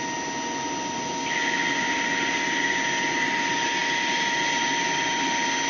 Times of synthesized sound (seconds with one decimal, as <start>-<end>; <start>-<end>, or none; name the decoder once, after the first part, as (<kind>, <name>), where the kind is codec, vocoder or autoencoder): none